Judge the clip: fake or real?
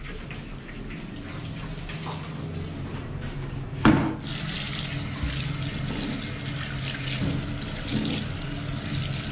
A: real